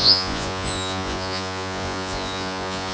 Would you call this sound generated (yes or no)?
yes